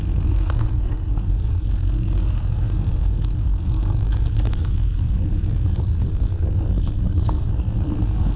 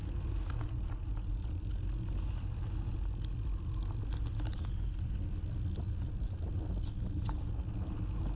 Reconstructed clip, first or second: first